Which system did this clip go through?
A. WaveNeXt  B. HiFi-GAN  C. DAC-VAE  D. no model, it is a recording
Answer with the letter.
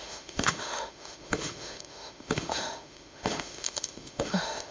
C